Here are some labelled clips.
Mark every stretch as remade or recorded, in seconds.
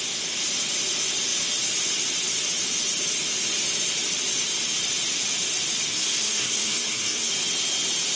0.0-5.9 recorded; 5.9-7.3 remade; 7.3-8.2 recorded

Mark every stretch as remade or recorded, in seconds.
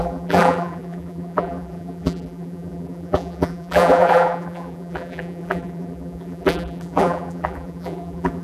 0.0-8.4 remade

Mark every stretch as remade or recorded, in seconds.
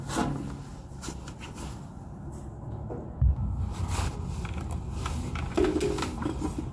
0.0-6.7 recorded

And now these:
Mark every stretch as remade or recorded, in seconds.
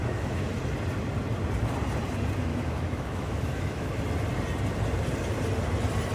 0.0-0.6 remade; 0.6-2.5 recorded; 2.5-4.0 remade; 4.0-6.1 recorded